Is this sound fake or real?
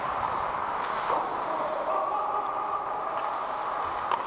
real